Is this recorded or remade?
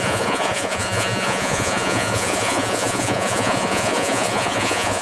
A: remade